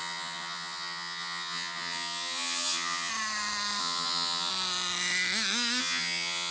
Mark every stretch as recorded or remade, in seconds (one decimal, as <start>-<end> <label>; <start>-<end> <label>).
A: 0.0-3.1 remade; 3.1-3.8 recorded; 3.8-4.5 remade; 4.5-5.8 recorded; 5.8-6.5 remade